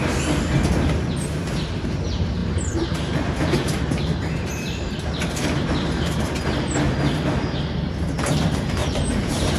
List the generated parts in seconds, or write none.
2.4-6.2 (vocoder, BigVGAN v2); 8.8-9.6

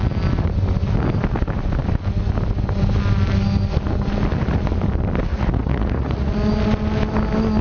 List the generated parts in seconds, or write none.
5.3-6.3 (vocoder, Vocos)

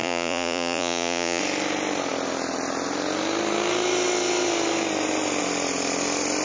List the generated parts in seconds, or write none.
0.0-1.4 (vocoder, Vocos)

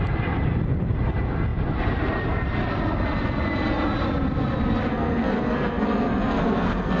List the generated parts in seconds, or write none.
4.9-7.0 (codec, SNAC)

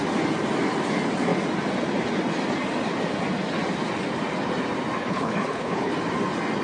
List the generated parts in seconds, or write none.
5.0-5.9 (codec, HILCodec)

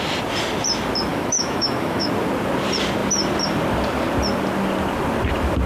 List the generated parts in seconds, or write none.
1.1-2.1 (autoencoder, DAC-VAE)

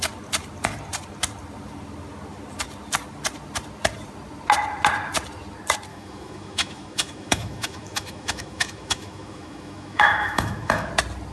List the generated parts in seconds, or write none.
5.9-10.9 (autoencoder, DAC-VAE)

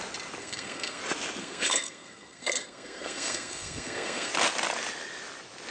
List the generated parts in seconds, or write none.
0.4-1.0 (codec, SNAC); 1.4-4.3